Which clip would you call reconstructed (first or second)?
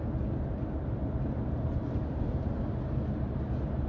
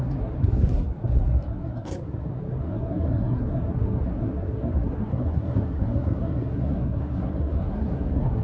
second